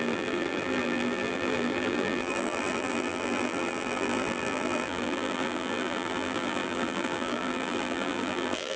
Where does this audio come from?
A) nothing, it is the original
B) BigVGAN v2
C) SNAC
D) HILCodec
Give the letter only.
B